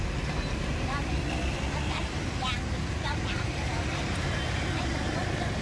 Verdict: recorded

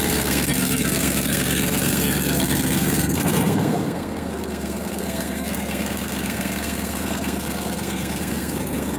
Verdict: remade